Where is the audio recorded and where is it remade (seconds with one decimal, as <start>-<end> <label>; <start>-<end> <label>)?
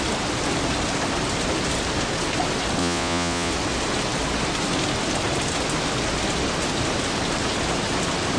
0.0-2.8 recorded; 2.8-3.5 remade; 3.5-8.4 recorded